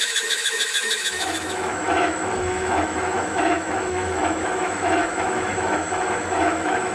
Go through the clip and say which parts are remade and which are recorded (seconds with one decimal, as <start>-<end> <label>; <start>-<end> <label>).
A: 0.0-6.9 remade

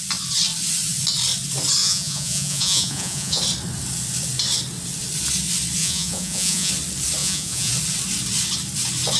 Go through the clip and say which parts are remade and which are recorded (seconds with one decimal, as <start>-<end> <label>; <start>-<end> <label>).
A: 0.0-1.8 recorded; 1.8-3.4 remade; 3.4-5.8 recorded; 5.8-6.7 remade; 6.7-7.2 recorded; 7.2-7.7 remade; 7.7-9.2 recorded

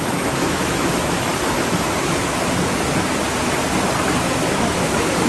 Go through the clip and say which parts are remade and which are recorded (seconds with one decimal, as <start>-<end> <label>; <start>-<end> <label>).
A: 0.0-1.3 remade; 1.3-4.5 recorded; 4.5-5.3 remade